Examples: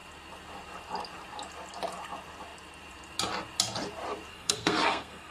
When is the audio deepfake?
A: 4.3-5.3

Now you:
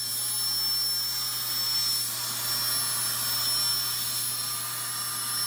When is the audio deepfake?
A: none

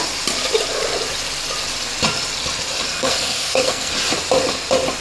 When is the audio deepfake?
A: 2.9-3.9

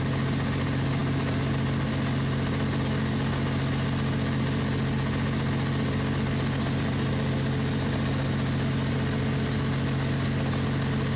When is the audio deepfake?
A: none